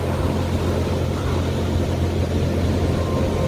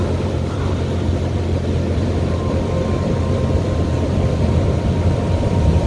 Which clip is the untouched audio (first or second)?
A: first